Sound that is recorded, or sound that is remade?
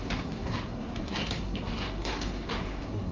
remade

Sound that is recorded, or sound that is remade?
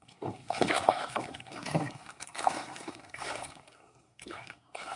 remade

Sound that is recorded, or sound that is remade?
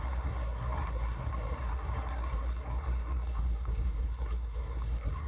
remade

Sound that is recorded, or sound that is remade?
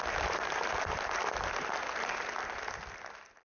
recorded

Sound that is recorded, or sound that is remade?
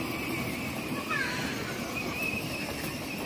recorded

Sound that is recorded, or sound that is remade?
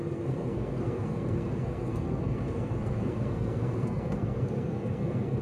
remade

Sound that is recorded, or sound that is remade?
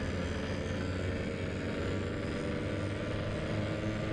recorded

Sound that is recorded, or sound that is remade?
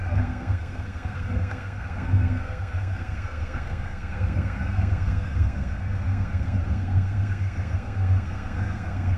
remade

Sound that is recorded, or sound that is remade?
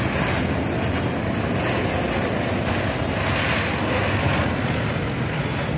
recorded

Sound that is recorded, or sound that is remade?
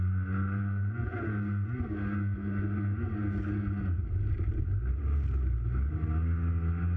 recorded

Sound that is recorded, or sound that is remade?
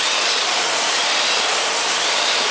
recorded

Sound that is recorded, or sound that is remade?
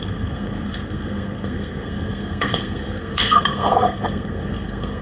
remade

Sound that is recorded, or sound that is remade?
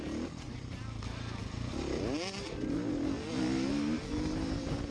recorded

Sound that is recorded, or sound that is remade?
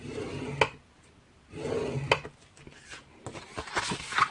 recorded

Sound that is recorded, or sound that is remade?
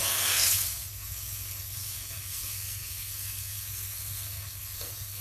remade